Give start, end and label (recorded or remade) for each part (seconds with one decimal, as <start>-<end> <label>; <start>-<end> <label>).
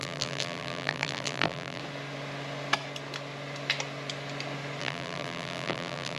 0.0-1.8 remade; 1.8-4.8 recorded; 4.8-6.2 remade